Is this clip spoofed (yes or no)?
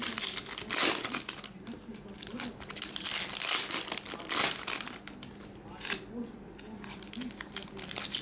no